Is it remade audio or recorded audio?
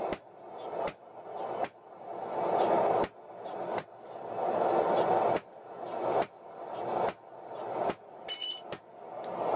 recorded